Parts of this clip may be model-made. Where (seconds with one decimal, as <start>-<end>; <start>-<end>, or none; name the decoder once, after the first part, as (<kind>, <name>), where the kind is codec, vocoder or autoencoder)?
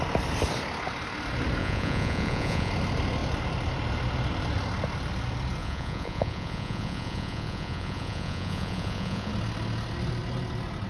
1.6-2.7 (vocoder, Vocos); 5.6-9.3